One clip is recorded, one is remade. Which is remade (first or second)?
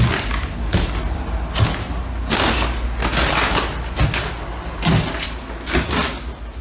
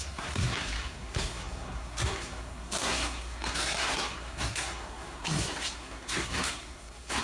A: second